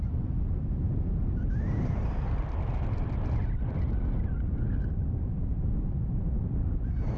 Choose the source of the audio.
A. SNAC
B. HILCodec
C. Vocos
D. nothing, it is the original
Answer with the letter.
D